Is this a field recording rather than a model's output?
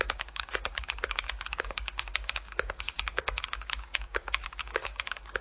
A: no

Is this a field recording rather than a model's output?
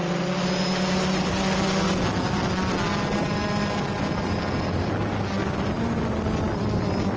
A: yes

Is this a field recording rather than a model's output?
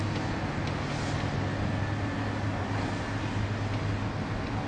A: yes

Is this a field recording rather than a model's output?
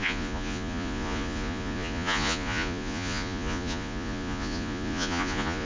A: no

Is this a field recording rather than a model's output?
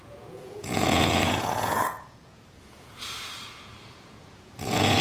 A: no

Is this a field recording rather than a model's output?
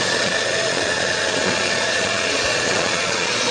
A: no